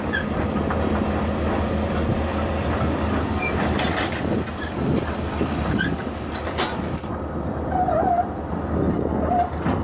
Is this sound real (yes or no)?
yes